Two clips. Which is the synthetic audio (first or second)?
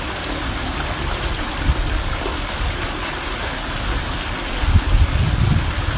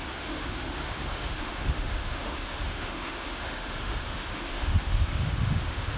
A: second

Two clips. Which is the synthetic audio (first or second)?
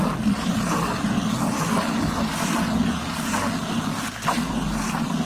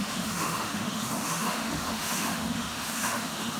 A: second